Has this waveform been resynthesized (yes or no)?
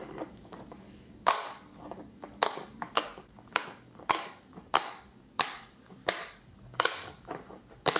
yes